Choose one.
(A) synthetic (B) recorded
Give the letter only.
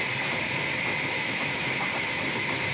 B